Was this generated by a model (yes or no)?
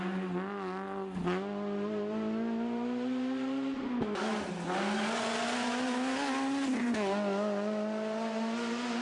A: no